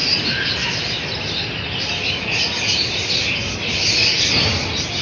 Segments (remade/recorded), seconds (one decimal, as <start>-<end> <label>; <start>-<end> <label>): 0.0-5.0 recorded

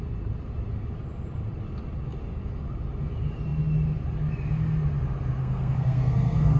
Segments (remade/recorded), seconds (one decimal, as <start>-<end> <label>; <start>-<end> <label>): 0.0-5.4 recorded; 5.4-6.6 remade

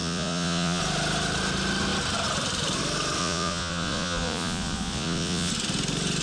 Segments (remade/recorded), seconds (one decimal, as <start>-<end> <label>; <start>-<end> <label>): 0.0-0.8 remade; 0.8-3.2 recorded; 3.2-5.5 remade; 5.5-6.2 recorded